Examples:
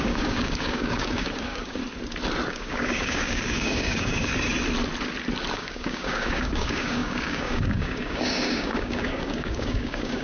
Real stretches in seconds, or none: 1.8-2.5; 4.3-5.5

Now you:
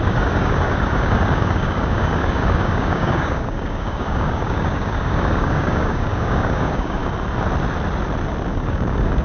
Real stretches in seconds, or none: 7.0-8.5

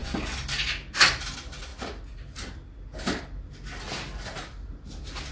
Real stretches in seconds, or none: 0.7-5.3

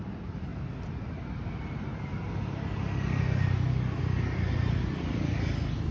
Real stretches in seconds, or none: 0.0-5.9

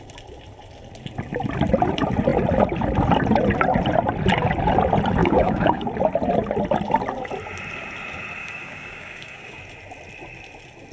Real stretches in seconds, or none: 0.0-5.2; 5.9-8.4; 9.6-10.9

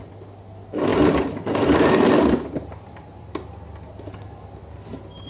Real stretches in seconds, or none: 0.0-5.3